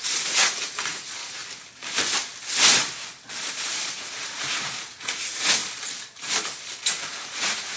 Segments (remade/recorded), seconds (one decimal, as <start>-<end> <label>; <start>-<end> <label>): 0.0-1.4 remade; 1.4-3.7 recorded; 3.7-5.6 remade; 5.6-6.9 recorded; 6.9-7.8 remade